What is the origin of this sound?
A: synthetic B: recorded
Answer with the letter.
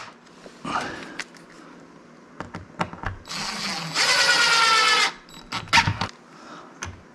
B